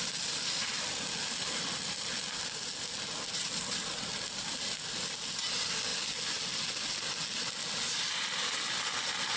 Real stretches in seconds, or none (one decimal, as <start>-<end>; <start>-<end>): 0.0-9.4